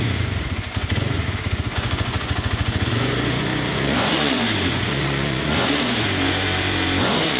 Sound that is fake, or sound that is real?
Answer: fake